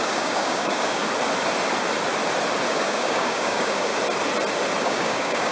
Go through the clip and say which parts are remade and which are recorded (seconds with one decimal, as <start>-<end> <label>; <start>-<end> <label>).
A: 0.0-1.0 remade; 1.0-2.7 recorded; 2.7-3.9 remade; 3.9-4.8 recorded; 4.8-5.5 remade